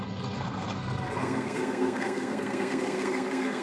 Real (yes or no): no